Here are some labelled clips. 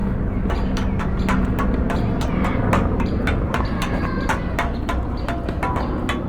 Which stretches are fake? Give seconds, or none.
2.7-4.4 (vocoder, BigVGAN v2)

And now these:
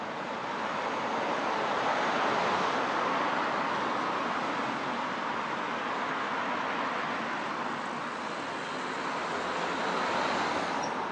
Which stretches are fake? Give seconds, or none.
none

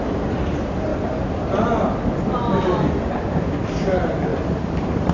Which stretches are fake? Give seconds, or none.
none

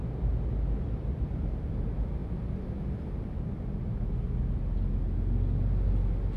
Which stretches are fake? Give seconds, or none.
none